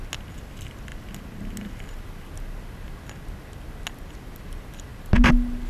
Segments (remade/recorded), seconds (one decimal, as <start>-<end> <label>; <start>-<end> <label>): 0.0-5.7 recorded